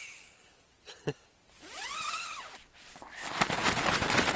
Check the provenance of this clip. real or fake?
real